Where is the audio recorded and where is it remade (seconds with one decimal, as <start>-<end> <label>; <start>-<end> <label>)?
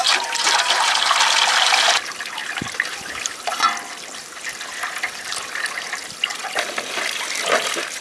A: 0.0-8.0 recorded